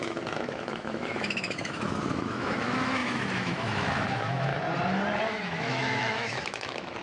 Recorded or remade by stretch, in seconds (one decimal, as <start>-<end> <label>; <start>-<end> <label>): 0.0-4.5 remade; 4.5-5.2 recorded; 5.2-7.0 remade